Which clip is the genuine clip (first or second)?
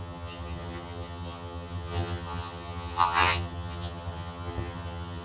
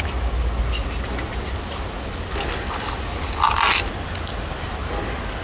second